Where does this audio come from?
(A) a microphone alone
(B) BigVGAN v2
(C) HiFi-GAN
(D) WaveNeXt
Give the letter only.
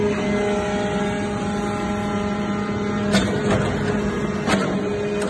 A